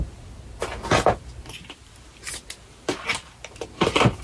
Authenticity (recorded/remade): recorded